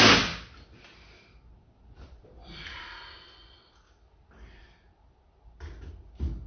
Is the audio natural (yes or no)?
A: yes